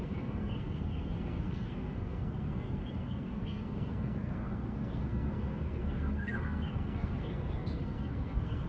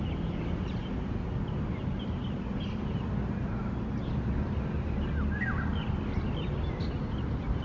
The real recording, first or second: second